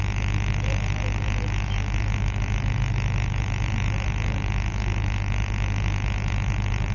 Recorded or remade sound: remade